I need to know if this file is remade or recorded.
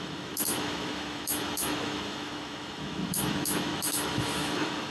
remade